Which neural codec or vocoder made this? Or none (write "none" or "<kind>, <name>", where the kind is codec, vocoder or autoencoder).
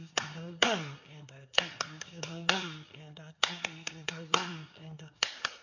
codec, SNAC